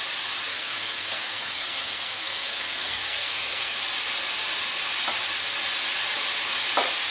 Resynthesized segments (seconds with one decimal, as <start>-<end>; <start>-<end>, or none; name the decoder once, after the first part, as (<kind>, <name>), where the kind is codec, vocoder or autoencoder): 0.5-3.8 (codec, SNAC)